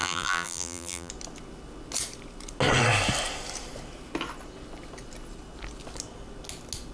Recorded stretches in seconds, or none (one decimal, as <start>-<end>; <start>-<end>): 1.1-6.9